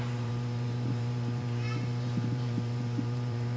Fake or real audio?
fake